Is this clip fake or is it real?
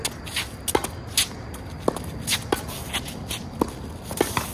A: real